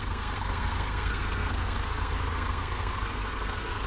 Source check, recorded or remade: remade